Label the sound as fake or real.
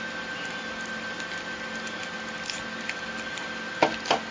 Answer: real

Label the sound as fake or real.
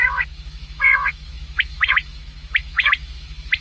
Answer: fake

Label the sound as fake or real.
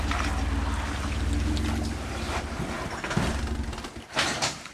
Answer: real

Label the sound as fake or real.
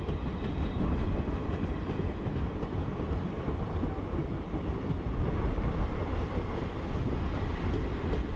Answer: real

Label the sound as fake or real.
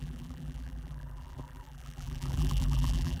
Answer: fake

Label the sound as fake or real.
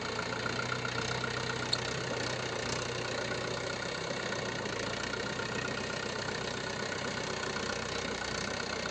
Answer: real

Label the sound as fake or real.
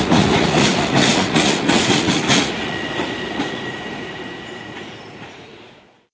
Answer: fake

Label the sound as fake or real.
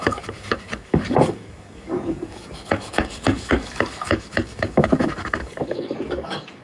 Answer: fake